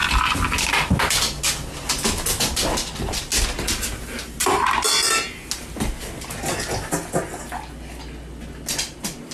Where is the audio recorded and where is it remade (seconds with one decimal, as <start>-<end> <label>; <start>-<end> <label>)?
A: 0.0-0.7 remade; 0.7-4.4 recorded; 4.4-5.2 remade; 5.2-9.3 recorded